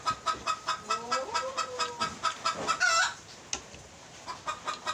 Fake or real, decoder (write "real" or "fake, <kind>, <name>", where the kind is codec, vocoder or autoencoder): real